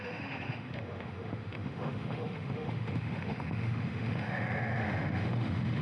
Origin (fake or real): fake